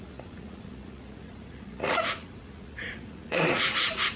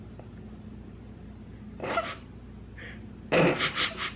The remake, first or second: first